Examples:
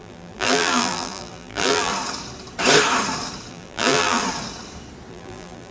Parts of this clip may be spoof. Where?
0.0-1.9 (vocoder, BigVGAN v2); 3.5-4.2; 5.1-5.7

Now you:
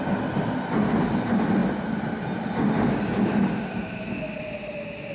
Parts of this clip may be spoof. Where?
none

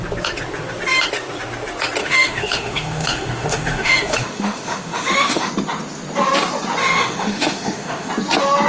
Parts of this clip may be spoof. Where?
2.0-5.5 (autoencoder, DAC-VAE); 6.8-8.1

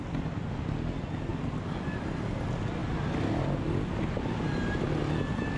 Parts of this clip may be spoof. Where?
none

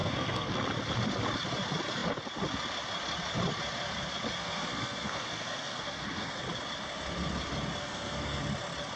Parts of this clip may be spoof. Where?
0.0-0.5 (codec, SNAC); 4.4-6.4; 7.8-8.4

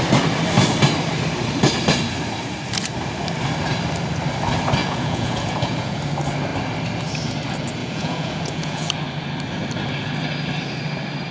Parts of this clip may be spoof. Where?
4.8-6.0 (vocoder, Vocos); 7.8-8.9

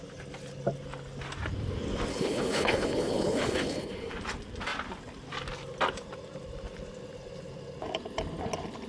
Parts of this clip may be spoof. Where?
2.1-4.1 (codec, HILCodec)